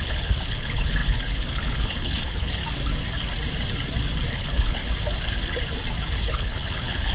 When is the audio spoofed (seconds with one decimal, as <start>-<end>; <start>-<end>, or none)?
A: 0.0-2.6; 4.3-4.8; 6.2-7.1